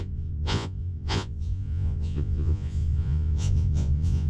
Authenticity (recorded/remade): remade